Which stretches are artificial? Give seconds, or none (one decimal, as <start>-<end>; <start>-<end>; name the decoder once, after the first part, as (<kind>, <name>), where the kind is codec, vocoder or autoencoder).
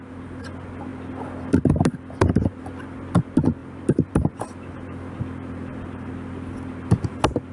none